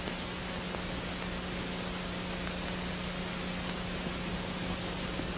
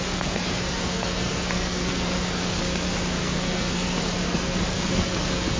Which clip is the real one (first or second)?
first